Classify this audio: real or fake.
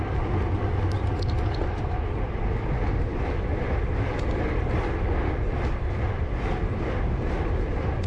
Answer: real